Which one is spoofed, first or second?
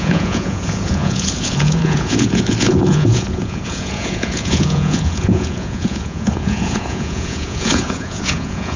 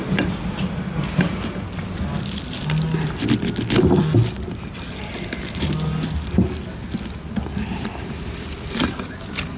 first